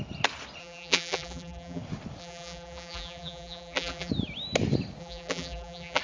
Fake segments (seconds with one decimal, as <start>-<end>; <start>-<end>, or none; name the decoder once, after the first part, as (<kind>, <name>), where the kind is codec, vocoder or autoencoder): 0.6-1.8 (vocoder, BigVGAN v2); 2.2-4.1; 5.0-6.0